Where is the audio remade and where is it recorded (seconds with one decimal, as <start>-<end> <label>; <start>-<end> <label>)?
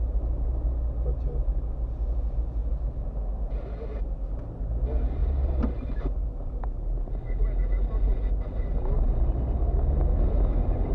0.0-10.9 recorded